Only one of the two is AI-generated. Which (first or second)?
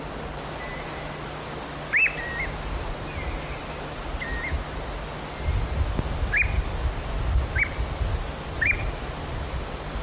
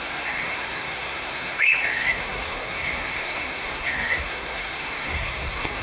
second